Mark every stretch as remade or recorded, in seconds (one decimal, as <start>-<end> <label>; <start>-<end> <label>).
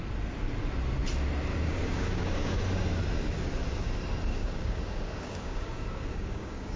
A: 0.0-1.5 recorded; 1.5-2.6 remade; 2.6-4.3 recorded; 4.3-6.8 remade